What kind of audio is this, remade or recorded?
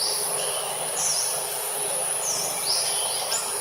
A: recorded